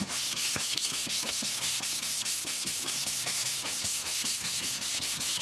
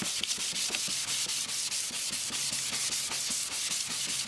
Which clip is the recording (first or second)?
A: second